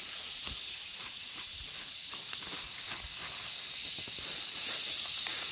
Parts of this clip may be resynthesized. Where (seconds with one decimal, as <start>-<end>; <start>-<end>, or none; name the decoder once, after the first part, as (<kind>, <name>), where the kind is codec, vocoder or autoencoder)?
0.0-3.1 (vocoder, Vocos); 4.4-5.5